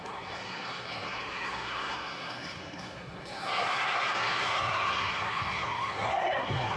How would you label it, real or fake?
fake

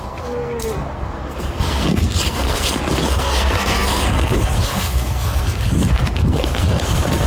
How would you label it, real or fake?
fake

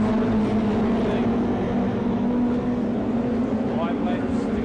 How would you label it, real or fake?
real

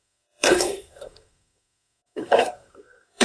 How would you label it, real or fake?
fake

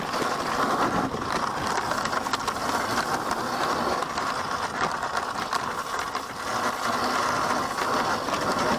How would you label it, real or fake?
real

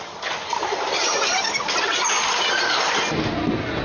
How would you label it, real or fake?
real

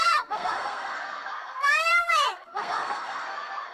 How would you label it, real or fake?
fake